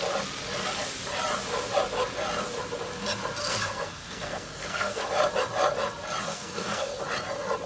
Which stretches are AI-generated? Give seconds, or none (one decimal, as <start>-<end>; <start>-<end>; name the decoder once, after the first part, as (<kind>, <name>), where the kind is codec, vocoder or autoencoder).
3.4-5.1 (codec, SNAC); 6.3-7.0